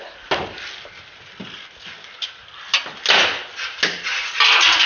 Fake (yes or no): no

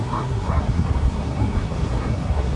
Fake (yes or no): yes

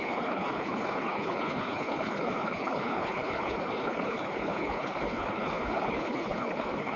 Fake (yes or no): yes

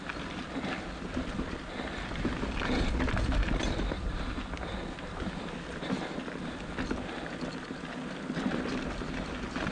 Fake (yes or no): no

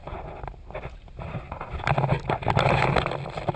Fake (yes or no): no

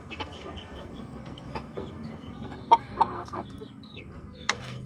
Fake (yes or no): yes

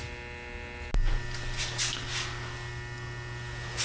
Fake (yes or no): no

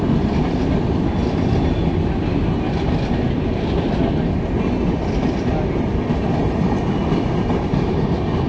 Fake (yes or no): no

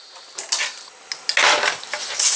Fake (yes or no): no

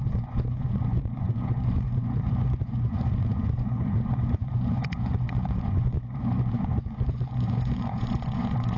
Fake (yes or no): yes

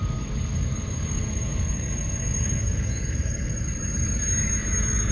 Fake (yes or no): yes